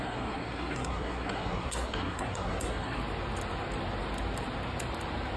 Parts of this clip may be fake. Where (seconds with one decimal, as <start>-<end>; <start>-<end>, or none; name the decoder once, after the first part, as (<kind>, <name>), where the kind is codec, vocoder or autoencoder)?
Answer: 0.0-3.0 (codec, SNAC)